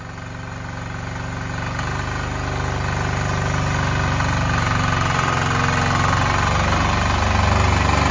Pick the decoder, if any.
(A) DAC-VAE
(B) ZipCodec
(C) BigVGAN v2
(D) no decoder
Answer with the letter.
D